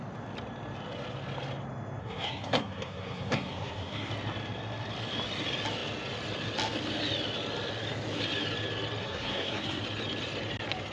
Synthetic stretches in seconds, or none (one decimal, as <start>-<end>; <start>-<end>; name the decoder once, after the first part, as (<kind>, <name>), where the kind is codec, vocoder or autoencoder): 2.0-4.1 (codec, SNAC); 9.0-9.8